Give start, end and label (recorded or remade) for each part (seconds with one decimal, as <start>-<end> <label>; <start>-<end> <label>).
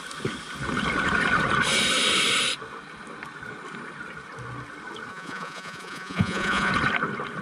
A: 0.0-5.1 recorded; 5.1-6.7 remade; 6.7-7.4 recorded